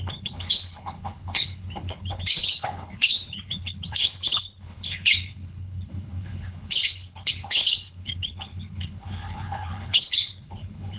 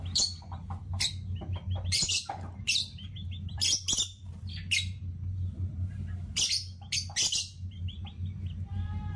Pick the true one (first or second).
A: second